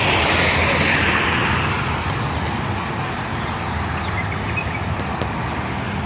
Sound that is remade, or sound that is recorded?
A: recorded